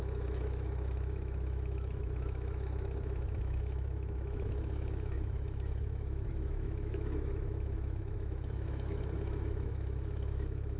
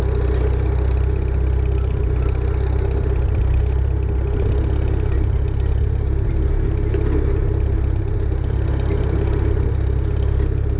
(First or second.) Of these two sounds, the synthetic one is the first